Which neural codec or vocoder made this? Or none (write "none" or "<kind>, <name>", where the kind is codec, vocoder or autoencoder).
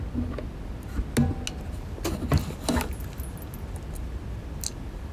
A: none